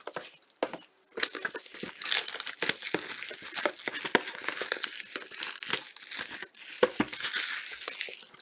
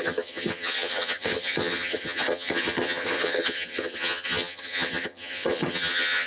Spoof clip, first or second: second